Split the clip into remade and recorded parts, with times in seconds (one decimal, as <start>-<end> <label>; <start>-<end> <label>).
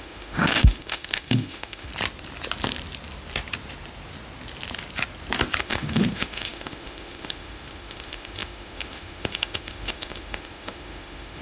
0.0-1.9 remade; 1.9-5.6 recorded; 5.6-11.4 remade